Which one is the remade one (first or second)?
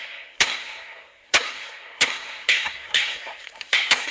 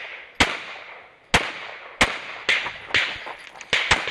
first